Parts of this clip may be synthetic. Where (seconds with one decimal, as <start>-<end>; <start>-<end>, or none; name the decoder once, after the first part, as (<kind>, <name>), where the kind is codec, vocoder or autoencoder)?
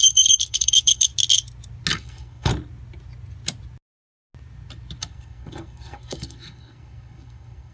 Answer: 0.0-1.1 (codec, SNAC); 1.9-2.5; 5.0-7.7